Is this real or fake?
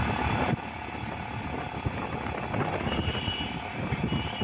real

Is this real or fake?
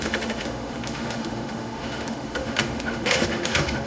fake